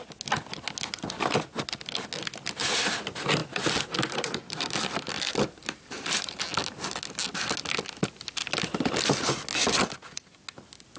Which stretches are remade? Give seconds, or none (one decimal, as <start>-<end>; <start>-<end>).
3.4-6.4; 8.4-9.3